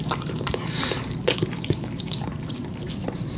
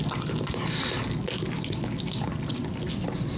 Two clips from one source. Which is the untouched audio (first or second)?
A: second